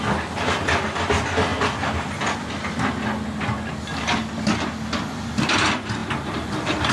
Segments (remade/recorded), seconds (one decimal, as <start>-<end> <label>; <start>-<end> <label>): 0.0-6.9 recorded